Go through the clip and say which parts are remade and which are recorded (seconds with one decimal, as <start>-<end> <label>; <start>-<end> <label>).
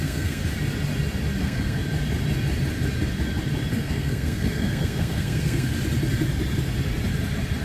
0.0-0.4 remade; 0.4-1.4 recorded; 1.4-1.8 remade; 1.8-3.7 recorded; 3.7-5.7 remade; 5.7-7.6 recorded